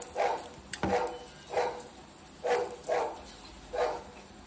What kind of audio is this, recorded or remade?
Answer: recorded